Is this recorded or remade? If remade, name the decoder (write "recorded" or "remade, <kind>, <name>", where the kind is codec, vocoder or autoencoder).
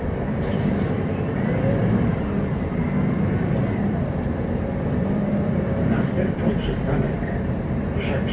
remade, vocoder, BigVGAN v2